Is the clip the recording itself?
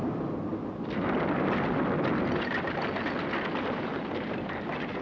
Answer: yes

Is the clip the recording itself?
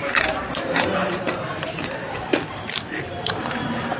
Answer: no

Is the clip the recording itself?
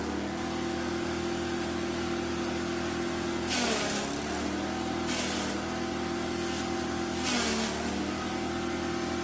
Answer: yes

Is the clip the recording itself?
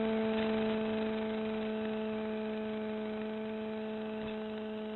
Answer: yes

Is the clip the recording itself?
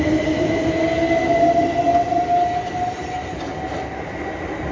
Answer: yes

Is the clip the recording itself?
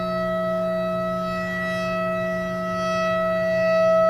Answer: yes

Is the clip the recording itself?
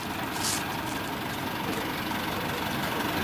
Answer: yes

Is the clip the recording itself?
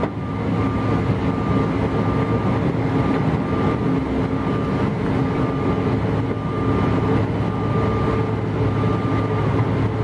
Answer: yes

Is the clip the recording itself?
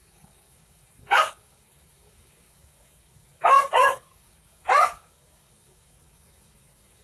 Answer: no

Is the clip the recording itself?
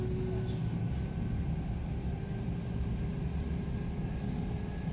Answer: yes